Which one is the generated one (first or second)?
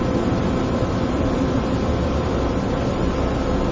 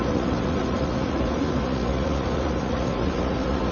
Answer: second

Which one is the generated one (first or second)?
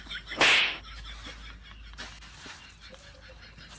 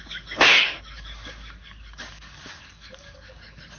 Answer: second